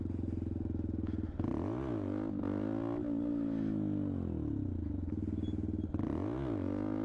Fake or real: real